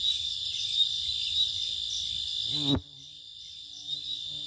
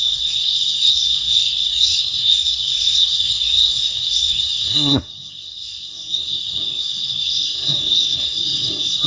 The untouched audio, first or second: first